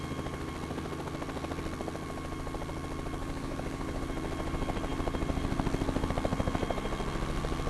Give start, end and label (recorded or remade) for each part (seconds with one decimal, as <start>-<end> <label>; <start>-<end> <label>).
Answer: 0.0-3.2 recorded; 3.2-4.0 remade; 4.0-7.7 recorded